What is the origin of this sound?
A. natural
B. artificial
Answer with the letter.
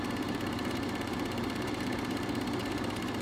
B